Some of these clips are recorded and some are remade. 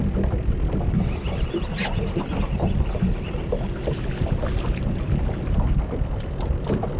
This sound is recorded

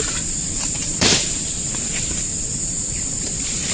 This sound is remade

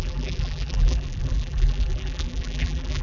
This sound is remade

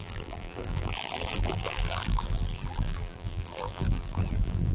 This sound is remade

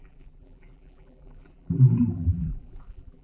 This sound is remade